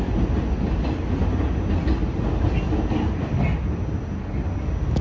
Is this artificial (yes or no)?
no